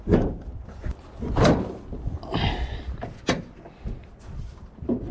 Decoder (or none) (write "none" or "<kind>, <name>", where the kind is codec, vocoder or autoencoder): none